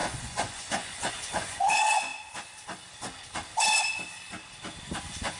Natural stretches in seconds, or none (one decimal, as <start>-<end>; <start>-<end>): 2.1-5.0

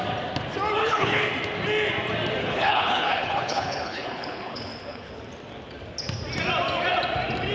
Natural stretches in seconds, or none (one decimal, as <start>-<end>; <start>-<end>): 0.0-0.8; 1.3-2.4; 5.2-7.5

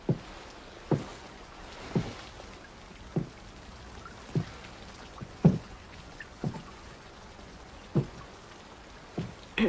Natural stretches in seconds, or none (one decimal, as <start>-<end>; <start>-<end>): 0.0-1.1; 1.6-5.0; 8.4-9.7

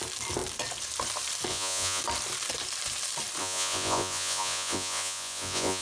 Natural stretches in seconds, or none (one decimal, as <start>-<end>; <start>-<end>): 0.0-1.5; 2.0-3.4

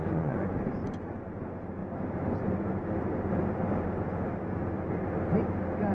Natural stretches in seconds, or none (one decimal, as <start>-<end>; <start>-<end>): 1.3-5.9